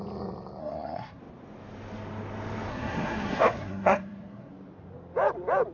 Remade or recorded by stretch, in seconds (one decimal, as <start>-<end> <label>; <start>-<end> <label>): 0.0-0.6 recorded; 0.6-1.2 remade; 1.2-2.7 recorded; 2.7-4.5 remade; 4.5-5.7 recorded